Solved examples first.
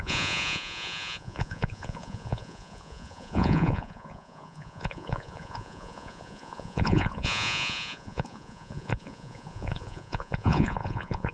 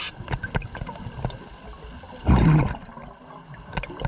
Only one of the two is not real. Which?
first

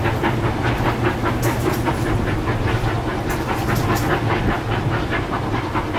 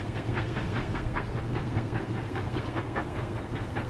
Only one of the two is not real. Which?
second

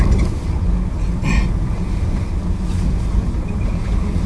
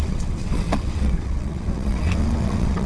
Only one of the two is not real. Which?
second